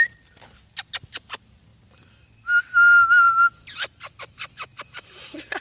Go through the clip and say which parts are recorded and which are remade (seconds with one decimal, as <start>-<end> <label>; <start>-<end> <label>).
0.0-5.6 recorded